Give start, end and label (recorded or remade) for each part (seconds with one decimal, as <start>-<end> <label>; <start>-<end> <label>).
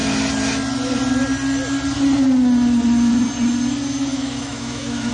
0.0-4.1 recorded; 4.1-5.1 remade